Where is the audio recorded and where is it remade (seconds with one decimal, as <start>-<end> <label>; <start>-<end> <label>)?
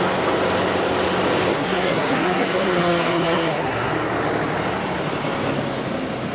0.0-1.5 recorded; 1.5-3.9 remade; 3.9-6.3 recorded